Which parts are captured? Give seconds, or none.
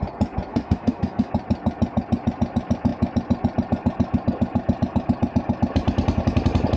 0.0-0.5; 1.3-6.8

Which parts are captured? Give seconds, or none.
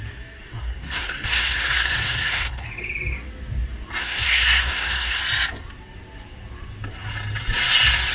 0.0-0.5; 2.7-4.0; 5.2-8.1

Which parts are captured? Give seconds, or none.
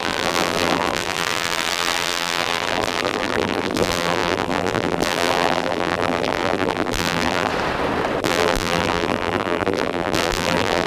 7.5-8.2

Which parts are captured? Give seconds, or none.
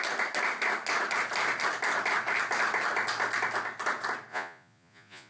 0.0-4.3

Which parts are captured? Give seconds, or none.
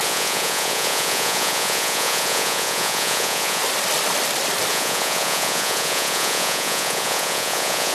3.6-4.7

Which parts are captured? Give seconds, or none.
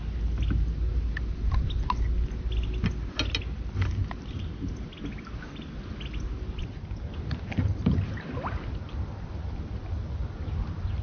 0.0-11.0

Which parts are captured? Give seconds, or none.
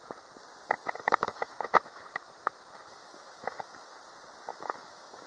0.0-0.8; 4.0-4.5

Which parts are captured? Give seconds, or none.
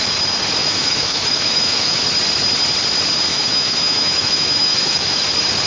0.0-0.6; 2.0-3.3; 5.2-5.7